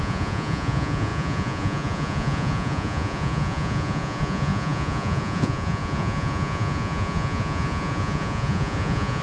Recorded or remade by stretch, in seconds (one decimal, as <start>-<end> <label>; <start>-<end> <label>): 0.0-9.2 remade